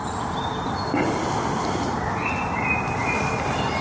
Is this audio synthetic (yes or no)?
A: no